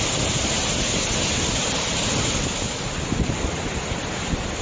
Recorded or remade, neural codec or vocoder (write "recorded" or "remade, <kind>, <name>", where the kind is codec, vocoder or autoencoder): recorded